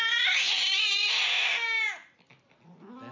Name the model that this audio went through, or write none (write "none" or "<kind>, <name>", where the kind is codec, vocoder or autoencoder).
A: none